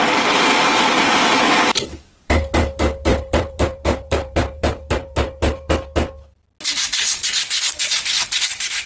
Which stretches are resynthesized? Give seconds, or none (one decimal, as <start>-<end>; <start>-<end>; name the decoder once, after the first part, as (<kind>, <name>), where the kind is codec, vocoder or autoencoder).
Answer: 3.1-5.8 (vocoder, BigVGAN v2)